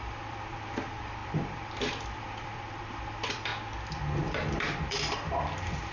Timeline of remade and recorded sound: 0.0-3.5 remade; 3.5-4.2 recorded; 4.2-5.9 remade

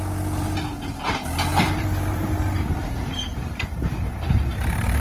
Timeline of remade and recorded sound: 0.0-1.5 recorded; 1.5-2.8 remade; 2.8-3.3 recorded; 3.3-3.8 remade; 3.8-5.0 recorded

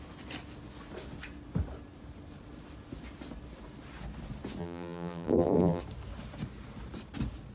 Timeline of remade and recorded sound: 0.0-4.6 recorded; 4.6-5.8 remade; 5.8-7.5 recorded

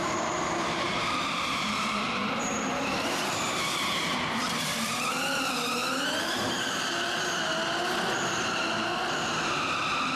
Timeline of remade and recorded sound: 0.0-5.2 remade; 5.2-5.8 recorded; 5.8-7.4 remade; 7.4-10.2 recorded

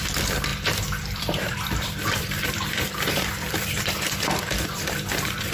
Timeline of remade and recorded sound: 0.0-5.5 remade

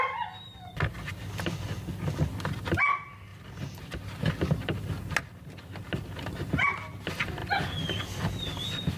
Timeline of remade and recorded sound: 0.0-9.0 recorded